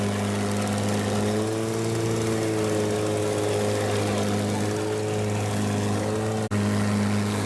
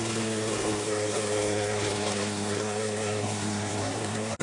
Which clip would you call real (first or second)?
first